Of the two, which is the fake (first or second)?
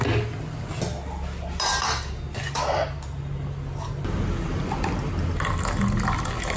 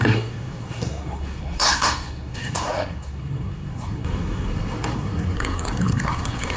second